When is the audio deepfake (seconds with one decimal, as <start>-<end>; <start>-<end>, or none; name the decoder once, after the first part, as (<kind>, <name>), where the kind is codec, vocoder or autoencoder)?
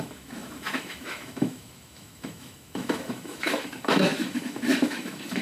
0.0-5.4 (autoencoder, DAC-VAE)